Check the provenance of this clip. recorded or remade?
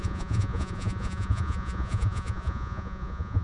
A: remade